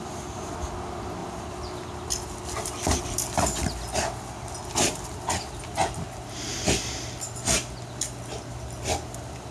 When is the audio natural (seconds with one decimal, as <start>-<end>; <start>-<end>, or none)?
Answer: 0.0-9.5